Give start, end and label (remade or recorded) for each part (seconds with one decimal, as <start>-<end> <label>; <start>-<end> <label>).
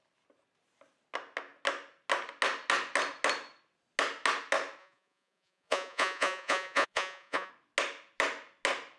0.0-4.8 recorded; 4.8-7.5 remade; 7.5-9.0 recorded